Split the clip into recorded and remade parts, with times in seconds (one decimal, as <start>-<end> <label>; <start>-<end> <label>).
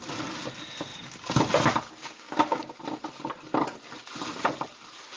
0.0-2.0 recorded; 2.0-2.8 remade; 2.8-5.2 recorded